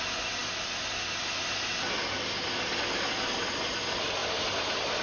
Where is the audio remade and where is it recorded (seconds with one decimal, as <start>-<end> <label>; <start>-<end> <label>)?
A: 0.0-5.0 recorded